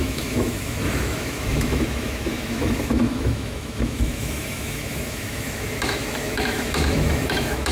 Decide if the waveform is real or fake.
fake